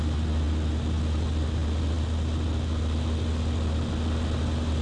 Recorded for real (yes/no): yes